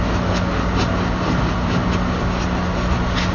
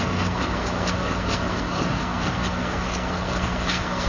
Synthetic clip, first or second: second